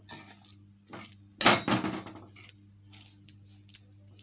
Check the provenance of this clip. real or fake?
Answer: real